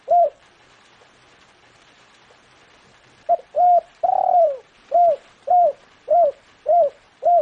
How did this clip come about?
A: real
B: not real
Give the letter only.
B